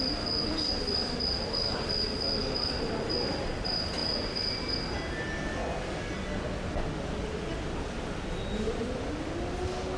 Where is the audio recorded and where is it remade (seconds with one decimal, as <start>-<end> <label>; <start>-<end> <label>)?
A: 0.0-10.0 recorded